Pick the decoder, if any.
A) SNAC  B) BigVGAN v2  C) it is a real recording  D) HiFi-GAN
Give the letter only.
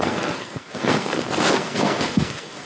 A